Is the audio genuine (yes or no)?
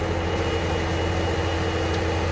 yes